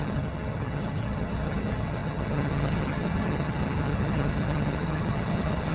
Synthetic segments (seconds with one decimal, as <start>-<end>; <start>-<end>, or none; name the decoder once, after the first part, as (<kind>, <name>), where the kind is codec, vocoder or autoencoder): 0.0-5.7 (vocoder, HiFi-GAN)